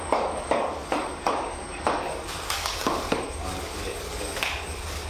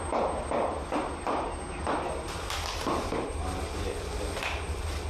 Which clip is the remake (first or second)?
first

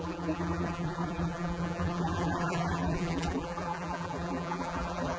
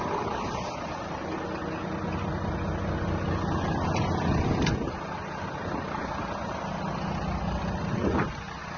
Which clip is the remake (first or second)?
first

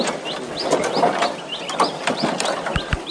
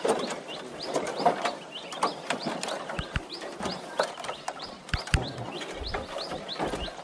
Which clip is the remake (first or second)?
second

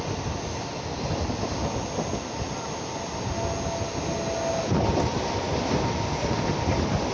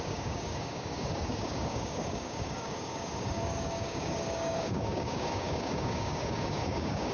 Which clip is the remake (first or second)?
second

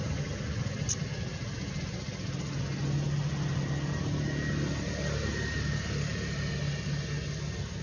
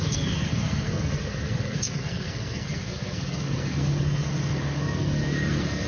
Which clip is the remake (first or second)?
second